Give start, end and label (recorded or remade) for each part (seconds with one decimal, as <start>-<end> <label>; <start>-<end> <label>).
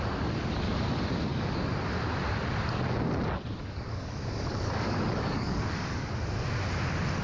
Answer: 0.0-1.3 recorded; 1.3-1.8 remade; 1.8-3.6 recorded; 3.6-6.1 remade; 6.1-7.2 recorded